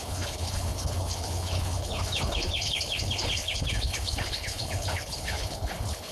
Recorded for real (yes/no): no